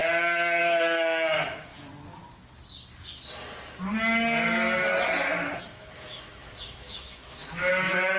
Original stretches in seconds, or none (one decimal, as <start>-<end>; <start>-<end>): 0.0-0.6; 1.7-5.6

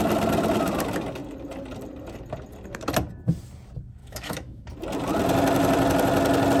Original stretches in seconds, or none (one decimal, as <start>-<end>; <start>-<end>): 0.0-4.0; 4.7-6.6

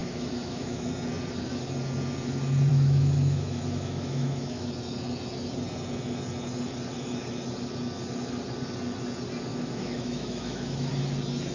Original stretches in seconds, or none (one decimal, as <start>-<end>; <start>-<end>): 0.9-2.7; 4.7-9.5; 10.9-11.5

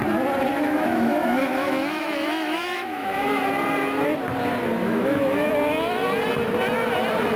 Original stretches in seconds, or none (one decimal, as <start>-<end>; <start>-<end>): 0.0-0.5; 3.4-4.8; 5.5-7.4

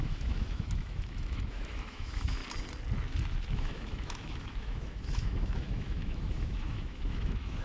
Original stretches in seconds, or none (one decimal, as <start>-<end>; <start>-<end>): 2.4-3.5

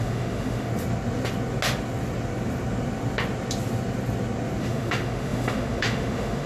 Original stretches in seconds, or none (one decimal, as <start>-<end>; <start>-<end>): 0.7-4.6